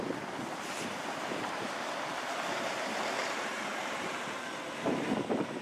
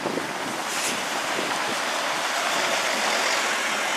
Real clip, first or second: second